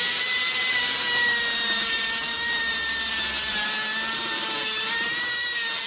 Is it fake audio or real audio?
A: real